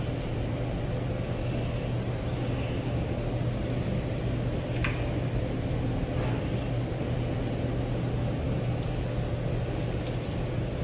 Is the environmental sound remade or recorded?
recorded